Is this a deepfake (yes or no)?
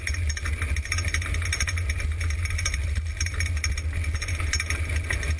no